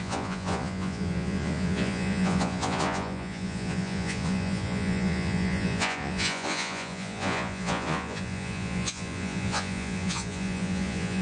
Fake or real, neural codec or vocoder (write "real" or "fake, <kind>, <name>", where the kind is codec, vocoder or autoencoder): fake, vocoder, Vocos